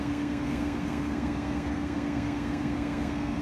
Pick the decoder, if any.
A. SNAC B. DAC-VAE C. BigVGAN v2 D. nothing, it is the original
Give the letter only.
A